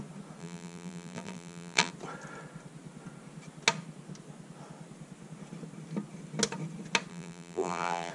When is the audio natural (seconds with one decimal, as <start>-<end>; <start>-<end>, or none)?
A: 0.0-0.4; 1.9-7.1